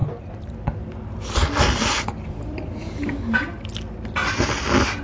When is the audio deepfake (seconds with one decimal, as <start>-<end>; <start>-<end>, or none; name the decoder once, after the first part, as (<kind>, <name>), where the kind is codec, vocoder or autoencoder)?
0.0-3.0 (vocoder, BigVGAN v2)